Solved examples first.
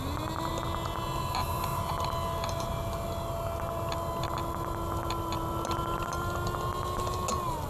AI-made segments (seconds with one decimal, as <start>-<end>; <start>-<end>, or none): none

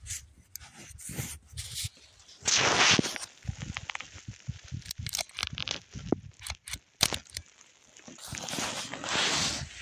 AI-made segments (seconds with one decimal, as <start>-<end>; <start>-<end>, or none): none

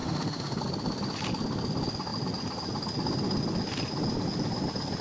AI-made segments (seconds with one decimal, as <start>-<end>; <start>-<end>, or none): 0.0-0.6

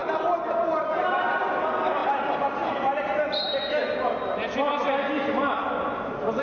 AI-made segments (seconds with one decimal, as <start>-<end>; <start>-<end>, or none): 0.0-1.4; 2.0-3.3

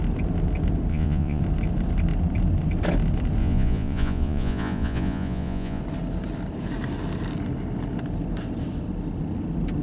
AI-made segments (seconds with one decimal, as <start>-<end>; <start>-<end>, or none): 0.9-1.4; 3.4-5.8

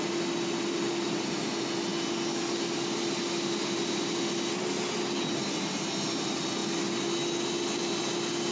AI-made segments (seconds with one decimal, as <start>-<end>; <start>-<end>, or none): none

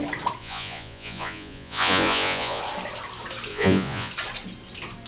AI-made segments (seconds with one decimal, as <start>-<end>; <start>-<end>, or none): 0.4-2.6; 3.5-4.1